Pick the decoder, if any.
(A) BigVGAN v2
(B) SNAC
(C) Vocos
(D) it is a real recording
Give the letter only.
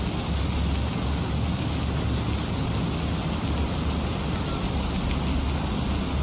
D